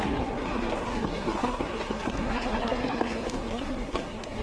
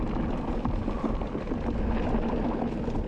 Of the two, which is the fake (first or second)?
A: first